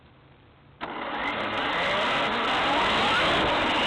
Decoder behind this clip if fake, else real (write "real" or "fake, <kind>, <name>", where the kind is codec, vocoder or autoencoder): real